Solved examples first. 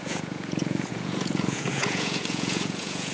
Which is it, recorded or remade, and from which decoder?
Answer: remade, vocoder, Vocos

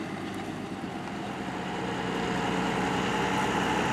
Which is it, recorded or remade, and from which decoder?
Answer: recorded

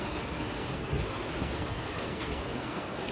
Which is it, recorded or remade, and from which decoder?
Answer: remade, codec, SNAC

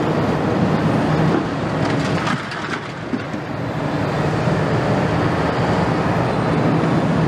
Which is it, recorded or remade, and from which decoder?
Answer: recorded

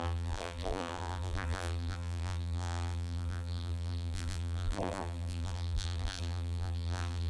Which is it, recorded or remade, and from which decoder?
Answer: remade, vocoder, BigVGAN v2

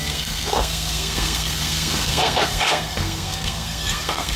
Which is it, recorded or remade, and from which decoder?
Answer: remade, codec, SNAC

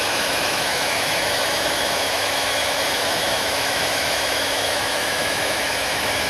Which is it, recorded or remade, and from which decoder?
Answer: remade, autoencoder, DAC-VAE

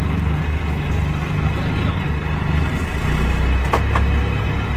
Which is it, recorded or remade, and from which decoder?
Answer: recorded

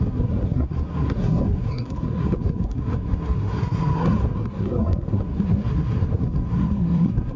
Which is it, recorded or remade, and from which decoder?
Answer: remade, codec, SNAC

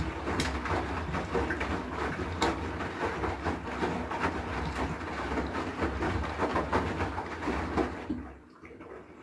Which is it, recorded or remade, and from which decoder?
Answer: recorded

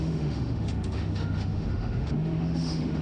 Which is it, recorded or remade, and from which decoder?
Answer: remade, autoencoder, DAC-VAE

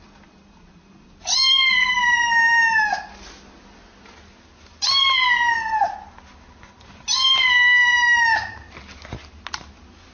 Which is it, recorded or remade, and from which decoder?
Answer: recorded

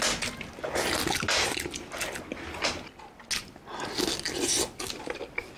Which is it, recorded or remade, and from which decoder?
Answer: recorded